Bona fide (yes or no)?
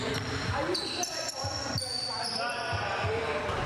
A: yes